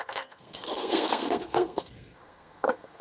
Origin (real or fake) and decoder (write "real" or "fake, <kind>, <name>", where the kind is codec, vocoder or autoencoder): fake, codec, SNAC